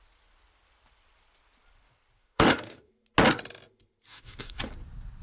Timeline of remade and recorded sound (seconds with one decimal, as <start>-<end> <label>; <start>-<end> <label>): 0.0-2.2 recorded; 2.2-2.9 remade; 2.9-4.1 recorded; 4.1-4.6 remade; 4.6-5.2 recorded

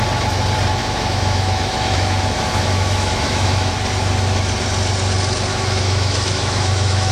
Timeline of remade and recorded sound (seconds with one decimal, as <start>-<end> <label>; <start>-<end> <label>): 0.0-0.8 recorded; 0.8-3.7 remade; 3.7-5.5 recorded; 5.5-7.1 remade

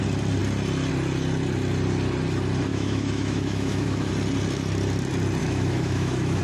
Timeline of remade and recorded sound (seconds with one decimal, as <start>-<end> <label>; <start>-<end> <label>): 0.0-2.7 recorded; 2.7-4.1 remade; 4.1-5.4 recorded; 5.4-6.4 remade